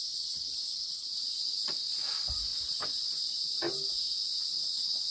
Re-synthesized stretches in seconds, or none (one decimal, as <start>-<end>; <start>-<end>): 0.5-1.3